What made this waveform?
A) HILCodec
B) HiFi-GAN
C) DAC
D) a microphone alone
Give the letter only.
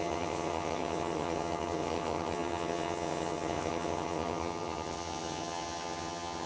B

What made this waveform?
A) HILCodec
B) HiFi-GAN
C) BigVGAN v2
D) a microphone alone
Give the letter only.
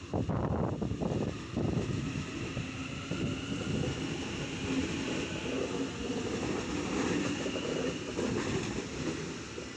D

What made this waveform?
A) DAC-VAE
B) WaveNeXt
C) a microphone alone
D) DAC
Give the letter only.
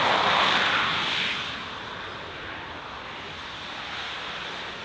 C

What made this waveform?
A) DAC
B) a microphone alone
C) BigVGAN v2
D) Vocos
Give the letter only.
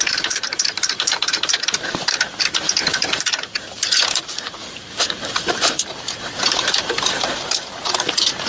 C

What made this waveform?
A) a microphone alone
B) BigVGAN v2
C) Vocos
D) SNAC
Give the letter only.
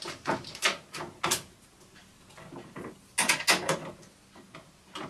A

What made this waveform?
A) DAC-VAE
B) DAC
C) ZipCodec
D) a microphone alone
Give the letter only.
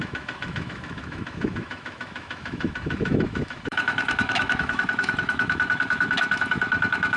A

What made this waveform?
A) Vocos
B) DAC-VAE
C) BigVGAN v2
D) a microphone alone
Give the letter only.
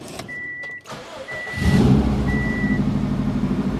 C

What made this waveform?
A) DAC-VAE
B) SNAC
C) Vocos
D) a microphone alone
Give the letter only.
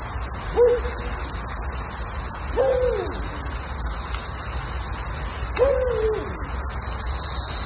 D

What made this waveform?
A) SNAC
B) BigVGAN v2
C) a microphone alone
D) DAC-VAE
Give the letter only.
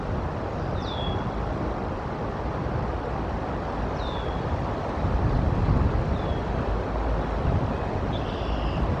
C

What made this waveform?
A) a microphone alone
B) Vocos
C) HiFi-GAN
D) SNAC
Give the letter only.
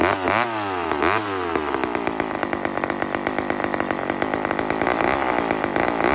A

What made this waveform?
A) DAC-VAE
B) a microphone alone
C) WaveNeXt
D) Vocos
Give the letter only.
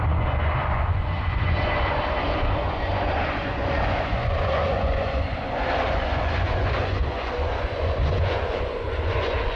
D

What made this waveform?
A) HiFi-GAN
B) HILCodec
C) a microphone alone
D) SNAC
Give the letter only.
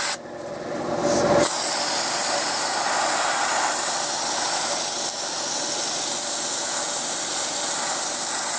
C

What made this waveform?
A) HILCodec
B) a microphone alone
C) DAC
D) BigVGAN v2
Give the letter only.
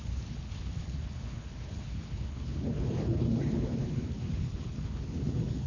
A